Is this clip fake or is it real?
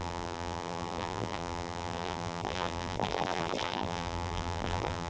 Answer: fake